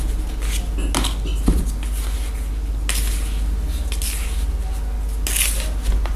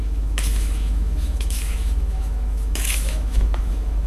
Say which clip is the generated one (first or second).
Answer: second